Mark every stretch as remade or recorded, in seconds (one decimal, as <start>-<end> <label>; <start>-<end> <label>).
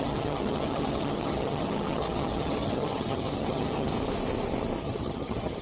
0.0-3.9 remade; 3.9-4.8 recorded; 4.8-5.6 remade